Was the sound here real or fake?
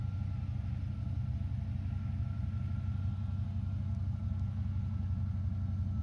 real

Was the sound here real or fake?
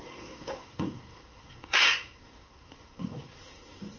fake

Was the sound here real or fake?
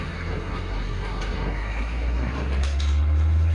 fake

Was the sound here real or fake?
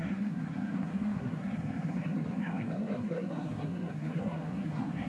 fake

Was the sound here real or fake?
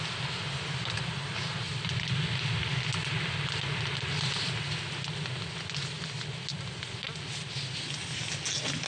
real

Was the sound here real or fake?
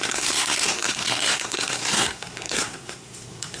fake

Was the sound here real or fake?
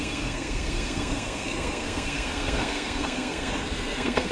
fake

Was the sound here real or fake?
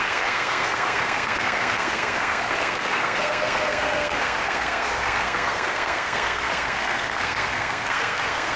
fake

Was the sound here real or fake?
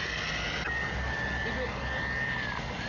real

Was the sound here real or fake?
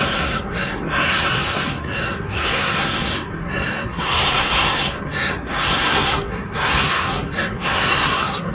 fake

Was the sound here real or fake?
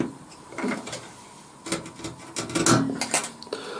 real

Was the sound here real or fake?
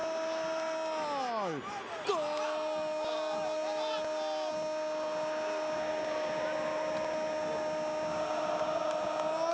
real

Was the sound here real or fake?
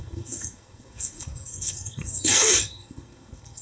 fake